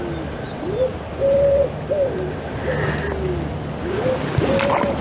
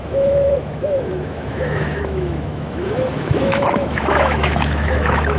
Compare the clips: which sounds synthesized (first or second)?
second